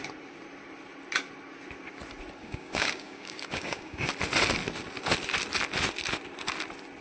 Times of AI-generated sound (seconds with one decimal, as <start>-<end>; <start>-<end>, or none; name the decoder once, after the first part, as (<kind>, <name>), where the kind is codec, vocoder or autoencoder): 2.4-4.1 (codec, DAC)